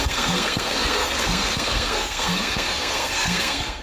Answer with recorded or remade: remade